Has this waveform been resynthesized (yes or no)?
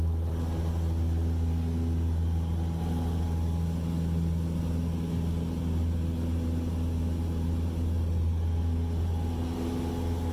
no